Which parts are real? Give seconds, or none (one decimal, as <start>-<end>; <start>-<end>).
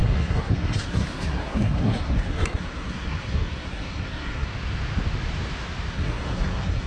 4.5-5.9